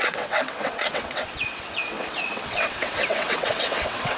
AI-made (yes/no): yes